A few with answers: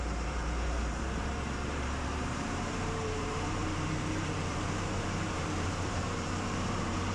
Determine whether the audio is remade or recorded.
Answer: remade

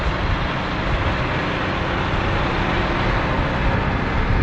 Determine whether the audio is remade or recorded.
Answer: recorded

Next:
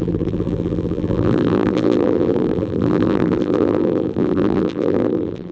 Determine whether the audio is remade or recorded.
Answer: remade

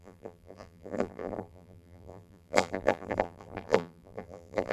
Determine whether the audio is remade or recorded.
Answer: remade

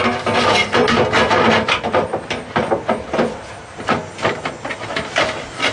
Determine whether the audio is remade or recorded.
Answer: recorded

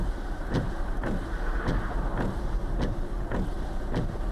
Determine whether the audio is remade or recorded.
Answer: remade